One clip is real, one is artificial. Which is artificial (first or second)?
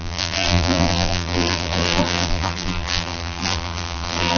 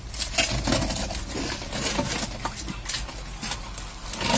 first